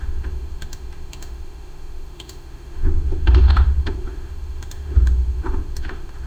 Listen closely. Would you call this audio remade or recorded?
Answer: remade